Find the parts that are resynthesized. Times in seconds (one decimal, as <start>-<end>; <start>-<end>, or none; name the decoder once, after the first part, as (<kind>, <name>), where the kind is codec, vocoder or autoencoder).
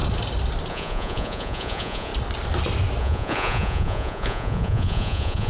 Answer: 0.7-2.1 (vocoder, Vocos); 3.0-5.5